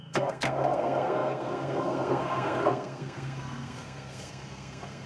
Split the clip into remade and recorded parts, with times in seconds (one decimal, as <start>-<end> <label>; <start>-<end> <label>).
0.0-5.1 remade